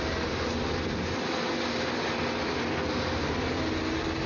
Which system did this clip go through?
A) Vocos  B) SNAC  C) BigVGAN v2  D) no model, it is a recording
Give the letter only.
D